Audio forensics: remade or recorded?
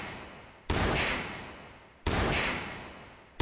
recorded